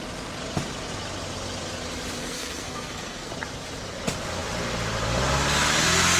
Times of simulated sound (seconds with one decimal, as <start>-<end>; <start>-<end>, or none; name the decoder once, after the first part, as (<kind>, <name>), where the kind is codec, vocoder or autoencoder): 2.2-3.3 (codec, SNAC)